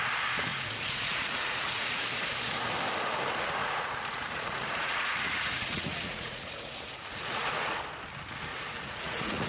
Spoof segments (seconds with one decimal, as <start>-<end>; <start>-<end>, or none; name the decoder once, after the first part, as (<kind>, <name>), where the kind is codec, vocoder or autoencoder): 0.5-2.0 (vocoder, Vocos); 3.6-7.8; 8.5-9.5